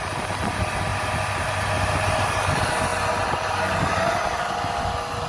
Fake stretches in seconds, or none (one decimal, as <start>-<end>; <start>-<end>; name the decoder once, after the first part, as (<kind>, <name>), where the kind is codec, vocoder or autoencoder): 0.9-1.7 (vocoder, BigVGAN v2)